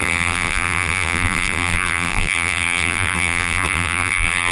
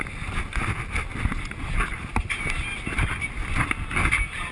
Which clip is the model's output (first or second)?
first